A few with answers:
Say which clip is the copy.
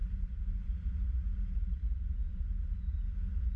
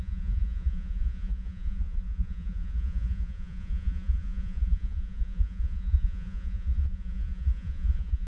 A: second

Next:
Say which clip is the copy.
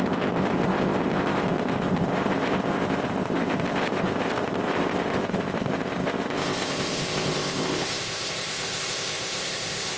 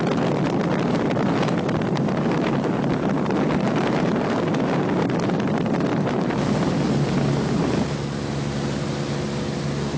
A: first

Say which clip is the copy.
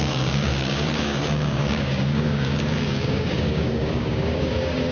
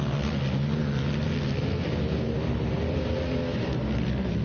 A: first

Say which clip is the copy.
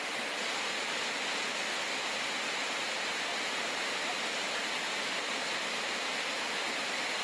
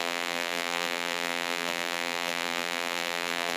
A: second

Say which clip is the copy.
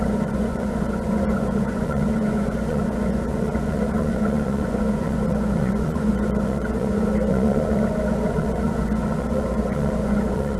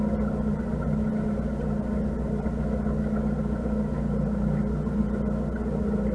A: first